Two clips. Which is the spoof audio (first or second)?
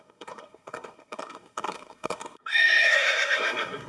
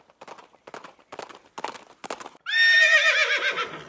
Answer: first